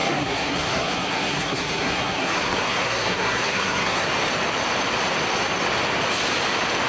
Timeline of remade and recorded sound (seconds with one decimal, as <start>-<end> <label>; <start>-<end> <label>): 0.0-4.1 remade; 4.1-6.9 recorded